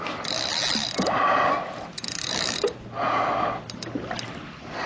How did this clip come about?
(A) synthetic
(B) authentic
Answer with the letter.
B